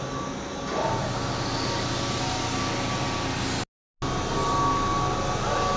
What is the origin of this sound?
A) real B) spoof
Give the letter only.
A